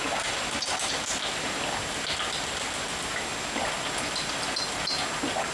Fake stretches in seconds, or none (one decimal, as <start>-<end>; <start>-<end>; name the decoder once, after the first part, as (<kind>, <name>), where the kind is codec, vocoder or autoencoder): none